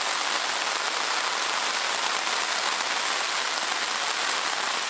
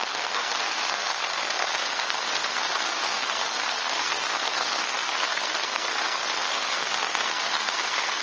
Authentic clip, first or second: first